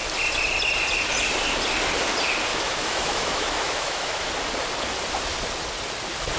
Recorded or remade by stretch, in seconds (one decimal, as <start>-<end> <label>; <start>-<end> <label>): 0.0-2.5 recorded; 2.5-4.3 remade; 4.3-6.4 recorded